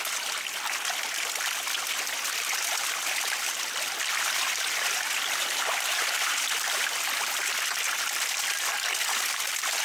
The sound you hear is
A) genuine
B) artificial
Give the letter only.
A